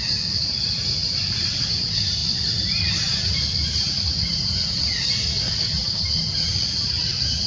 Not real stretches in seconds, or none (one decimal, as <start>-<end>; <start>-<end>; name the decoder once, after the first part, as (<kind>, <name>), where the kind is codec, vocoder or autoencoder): 2.2-2.8 (vocoder, BigVGAN v2); 5.8-7.0